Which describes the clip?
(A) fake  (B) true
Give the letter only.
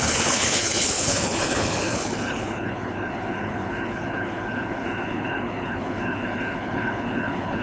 A